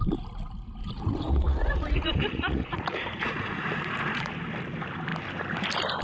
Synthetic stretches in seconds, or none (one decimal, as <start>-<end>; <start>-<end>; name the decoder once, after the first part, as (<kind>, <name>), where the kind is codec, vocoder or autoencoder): 0.8-4.3 (vocoder, Vocos)